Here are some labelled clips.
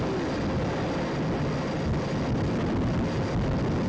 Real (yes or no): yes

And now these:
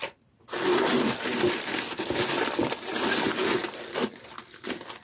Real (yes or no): yes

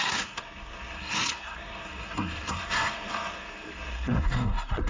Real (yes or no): no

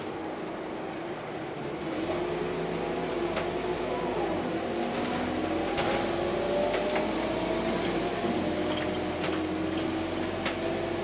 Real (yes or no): yes